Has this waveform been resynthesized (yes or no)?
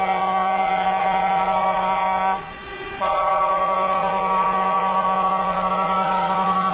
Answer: yes